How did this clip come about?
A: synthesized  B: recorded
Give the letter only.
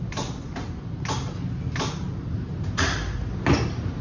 B